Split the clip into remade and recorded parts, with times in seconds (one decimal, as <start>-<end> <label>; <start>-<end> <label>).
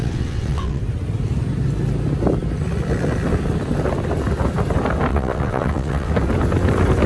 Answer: 0.0-0.8 remade; 0.8-5.1 recorded; 5.1-6.1 remade; 6.1-7.1 recorded